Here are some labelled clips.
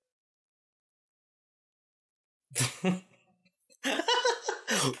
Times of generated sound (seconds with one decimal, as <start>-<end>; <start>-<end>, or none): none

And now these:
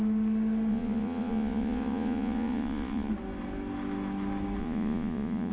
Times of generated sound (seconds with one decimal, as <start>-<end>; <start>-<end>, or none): 0.7-3.1; 4.6-5.5

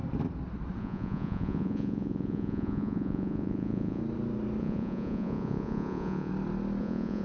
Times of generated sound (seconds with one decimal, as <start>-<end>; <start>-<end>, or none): 0.8-4.0; 4.6-6.3; 6.8-7.2

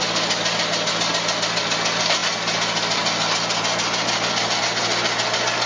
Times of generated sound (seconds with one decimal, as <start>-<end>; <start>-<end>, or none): none